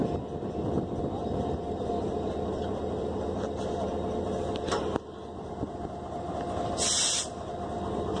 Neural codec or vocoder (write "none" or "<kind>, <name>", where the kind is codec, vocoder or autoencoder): none